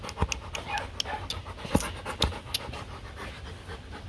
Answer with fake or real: real